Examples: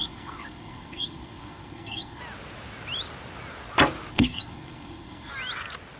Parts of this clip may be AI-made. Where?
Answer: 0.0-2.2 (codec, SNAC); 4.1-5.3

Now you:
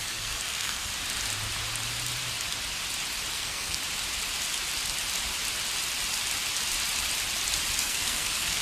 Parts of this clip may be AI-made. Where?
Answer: 0.0-0.9 (codec, SNAC); 3.3-3.8; 7.8-8.6

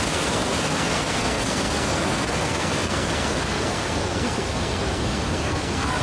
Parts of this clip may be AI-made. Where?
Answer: 0.0-6.0 (codec, SNAC)

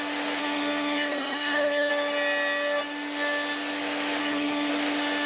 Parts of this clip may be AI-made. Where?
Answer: 0.4-1.9 (codec, SNAC); 4.2-4.7

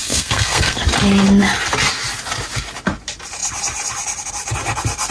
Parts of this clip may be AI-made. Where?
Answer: 0.0-0.8 (codec, SNAC)

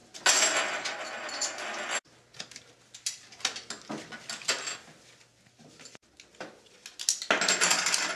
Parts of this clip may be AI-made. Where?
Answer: none